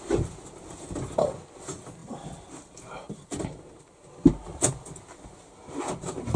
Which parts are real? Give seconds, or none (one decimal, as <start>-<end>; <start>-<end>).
0.0-6.4